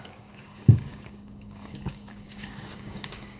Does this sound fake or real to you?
fake